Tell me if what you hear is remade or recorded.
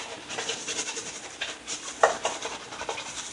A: remade